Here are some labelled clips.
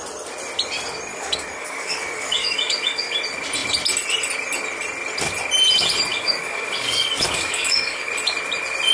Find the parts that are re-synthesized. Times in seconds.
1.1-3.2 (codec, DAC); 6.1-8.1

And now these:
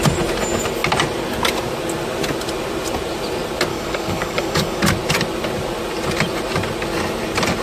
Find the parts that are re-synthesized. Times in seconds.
3.7-4.8 (codec, DAC)

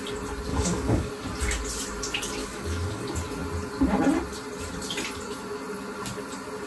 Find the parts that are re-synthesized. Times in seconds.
0.5-1.1 (codec, DAC); 2.4-3.0

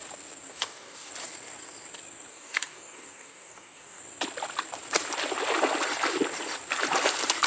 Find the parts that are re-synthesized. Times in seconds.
0.5-1.1 (codec, DAC); 2.3-4.0

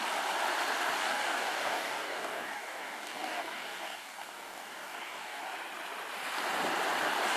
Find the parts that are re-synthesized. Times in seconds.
1.0-5.4 (codec, DAC)